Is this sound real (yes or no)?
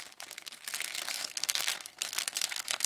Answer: no